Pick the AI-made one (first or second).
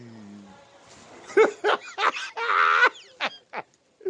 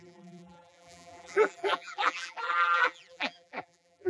second